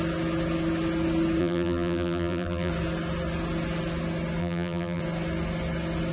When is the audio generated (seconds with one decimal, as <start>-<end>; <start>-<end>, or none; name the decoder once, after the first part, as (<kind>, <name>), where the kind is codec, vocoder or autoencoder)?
1.4-2.7 (vocoder, BigVGAN v2); 4.4-5.0

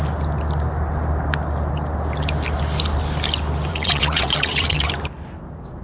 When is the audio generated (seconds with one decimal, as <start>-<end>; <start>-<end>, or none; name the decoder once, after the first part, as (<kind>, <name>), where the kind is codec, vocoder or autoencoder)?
3.7-4.9 (vocoder, WaveNeXt)

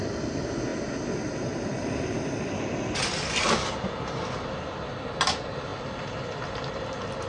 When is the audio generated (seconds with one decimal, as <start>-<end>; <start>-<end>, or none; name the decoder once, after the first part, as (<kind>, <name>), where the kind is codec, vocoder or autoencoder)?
none

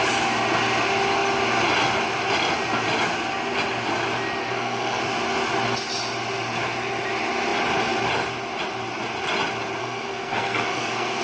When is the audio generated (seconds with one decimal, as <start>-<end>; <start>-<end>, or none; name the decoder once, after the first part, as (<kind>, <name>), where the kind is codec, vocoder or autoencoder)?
4.4-5.0 (codec, SNAC); 9.8-11.2